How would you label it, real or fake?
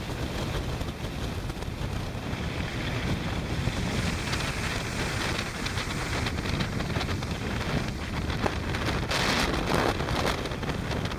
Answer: real